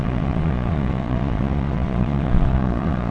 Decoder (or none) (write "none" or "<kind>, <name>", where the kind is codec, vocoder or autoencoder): vocoder, Vocos